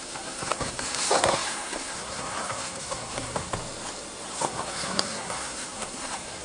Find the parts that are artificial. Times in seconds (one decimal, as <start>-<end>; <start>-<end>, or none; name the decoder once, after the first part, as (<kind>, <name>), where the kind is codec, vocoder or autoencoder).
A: 0.0-3.5 (codec, SNAC); 4.3-6.4